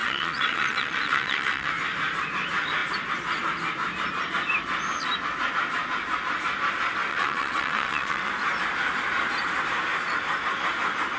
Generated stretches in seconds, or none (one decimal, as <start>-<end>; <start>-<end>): 0.0-1.7; 7.1-8.3